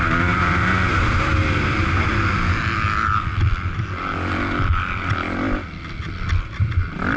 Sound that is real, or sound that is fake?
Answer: real